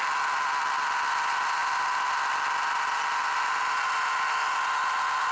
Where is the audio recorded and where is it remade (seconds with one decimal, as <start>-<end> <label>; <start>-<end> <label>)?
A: 0.0-5.3 recorded